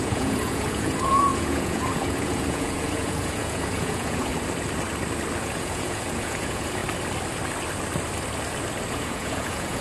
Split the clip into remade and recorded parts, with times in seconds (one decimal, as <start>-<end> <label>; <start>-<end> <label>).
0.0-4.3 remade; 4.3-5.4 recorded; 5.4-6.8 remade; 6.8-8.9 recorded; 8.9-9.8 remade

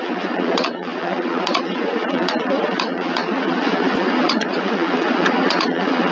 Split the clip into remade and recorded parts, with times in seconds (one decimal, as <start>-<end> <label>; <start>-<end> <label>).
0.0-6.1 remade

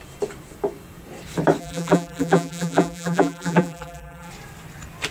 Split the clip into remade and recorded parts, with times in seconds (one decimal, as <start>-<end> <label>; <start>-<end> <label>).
0.0-1.6 recorded; 1.6-4.3 remade; 4.3-5.1 recorded